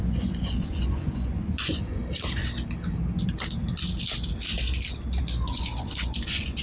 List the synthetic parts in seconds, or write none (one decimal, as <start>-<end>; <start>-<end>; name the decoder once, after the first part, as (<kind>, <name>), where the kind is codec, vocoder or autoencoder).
0.0-2.0 (vocoder, Vocos); 5.2-6.6